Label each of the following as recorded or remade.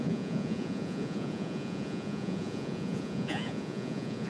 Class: remade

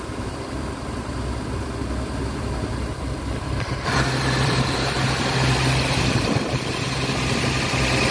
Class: remade